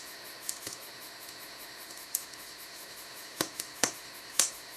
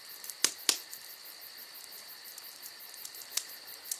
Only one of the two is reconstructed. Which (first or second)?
first